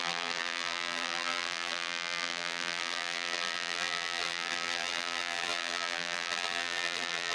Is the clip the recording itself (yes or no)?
no